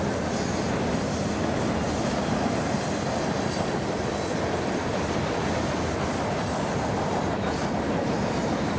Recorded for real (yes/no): yes